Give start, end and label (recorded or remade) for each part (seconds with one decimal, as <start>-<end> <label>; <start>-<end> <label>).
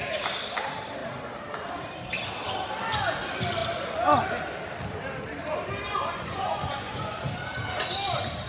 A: 0.0-5.9 recorded; 5.9-7.2 remade; 7.2-8.5 recorded